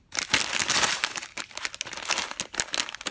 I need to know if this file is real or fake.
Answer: real